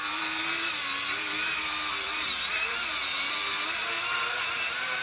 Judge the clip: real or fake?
fake